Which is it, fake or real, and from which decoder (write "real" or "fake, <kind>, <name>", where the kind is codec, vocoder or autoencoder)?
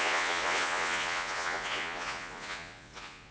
fake, vocoder, Vocos